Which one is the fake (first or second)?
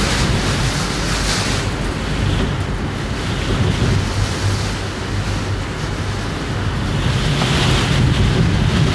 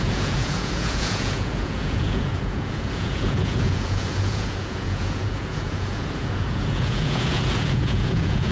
second